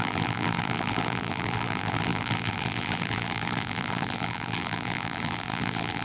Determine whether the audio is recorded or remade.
remade